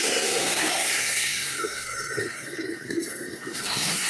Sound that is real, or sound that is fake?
fake